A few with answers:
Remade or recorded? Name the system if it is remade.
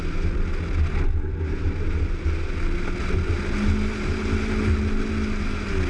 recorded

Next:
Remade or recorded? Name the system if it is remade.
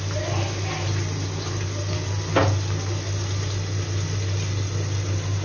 recorded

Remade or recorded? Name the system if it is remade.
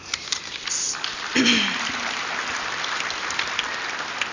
recorded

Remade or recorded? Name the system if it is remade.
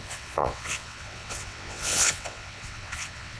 remade, vocoder, WaveNeXt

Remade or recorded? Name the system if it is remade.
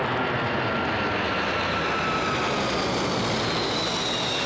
recorded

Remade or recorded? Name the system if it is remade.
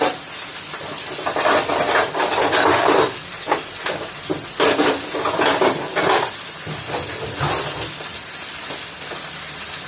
recorded